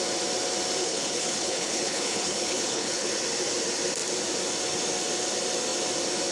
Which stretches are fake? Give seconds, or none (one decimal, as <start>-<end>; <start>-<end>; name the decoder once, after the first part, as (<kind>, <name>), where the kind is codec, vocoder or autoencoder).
0.8-3.1 (codec, HILCodec)